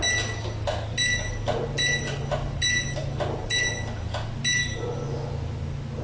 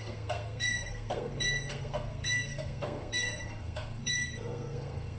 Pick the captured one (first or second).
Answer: first